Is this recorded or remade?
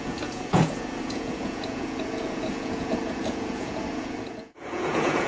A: remade